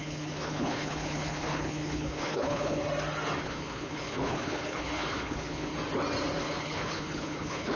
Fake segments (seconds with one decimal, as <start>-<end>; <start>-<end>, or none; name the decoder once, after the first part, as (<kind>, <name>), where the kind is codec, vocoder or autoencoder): 0.0-2.8 (codec, HILCodec); 3.4-5.7; 6.4-7.8